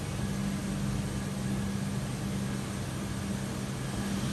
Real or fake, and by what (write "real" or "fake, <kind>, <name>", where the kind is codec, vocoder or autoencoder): real